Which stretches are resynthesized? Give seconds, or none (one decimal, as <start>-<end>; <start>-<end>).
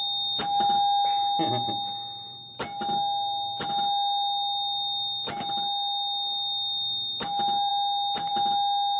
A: none